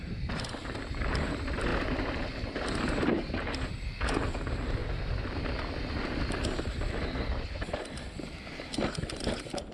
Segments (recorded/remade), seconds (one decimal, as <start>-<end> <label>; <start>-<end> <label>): 0.0-9.7 recorded